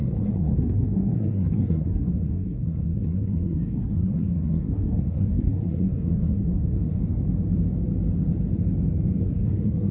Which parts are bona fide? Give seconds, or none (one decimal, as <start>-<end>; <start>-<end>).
7.0-9.2